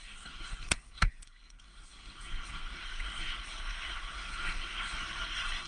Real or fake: fake